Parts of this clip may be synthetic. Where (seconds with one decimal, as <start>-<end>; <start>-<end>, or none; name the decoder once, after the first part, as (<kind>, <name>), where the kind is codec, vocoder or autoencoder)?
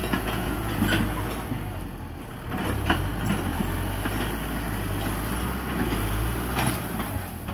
0.0-0.7 (vocoder, Vocos)